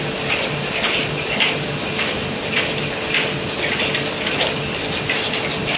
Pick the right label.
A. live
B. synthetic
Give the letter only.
A